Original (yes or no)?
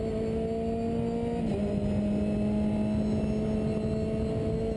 yes